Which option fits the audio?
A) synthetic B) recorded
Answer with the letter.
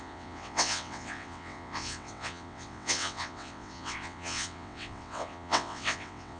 A